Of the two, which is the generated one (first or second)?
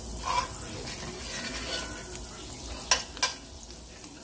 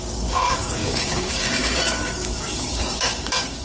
second